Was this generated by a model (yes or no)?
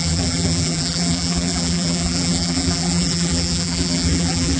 yes